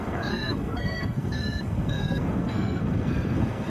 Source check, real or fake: fake